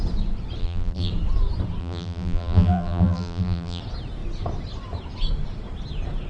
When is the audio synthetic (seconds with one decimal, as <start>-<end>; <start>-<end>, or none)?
0.6-1.1; 1.8-3.8